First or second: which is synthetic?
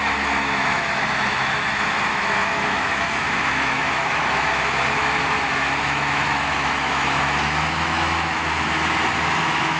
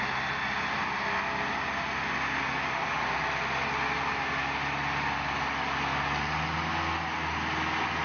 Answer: first